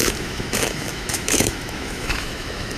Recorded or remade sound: remade